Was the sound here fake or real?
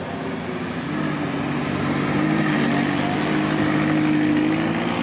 real